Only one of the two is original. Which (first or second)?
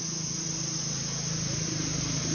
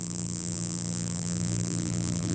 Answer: first